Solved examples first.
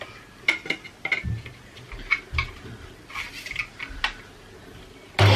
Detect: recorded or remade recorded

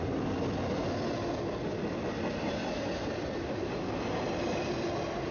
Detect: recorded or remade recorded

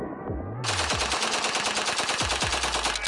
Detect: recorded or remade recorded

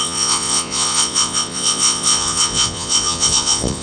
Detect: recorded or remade remade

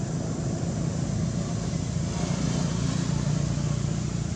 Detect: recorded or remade recorded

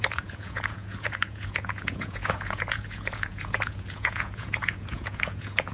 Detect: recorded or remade remade